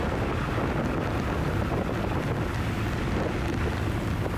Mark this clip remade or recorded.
recorded